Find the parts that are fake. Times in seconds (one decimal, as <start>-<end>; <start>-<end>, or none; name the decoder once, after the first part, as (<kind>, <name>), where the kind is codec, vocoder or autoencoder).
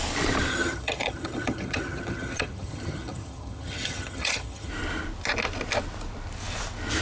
0.5-4.7 (vocoder, HiFi-GAN)